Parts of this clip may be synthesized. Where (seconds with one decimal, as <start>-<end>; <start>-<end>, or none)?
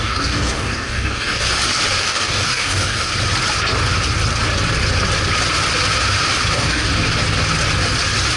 0.0-1.4; 2.0-3.1; 6.5-6.9